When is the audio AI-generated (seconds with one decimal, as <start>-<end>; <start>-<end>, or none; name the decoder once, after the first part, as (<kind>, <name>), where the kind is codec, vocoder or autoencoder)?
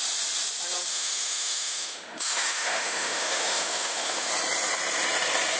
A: 0.9-4.3 (autoencoder, DAC-VAE)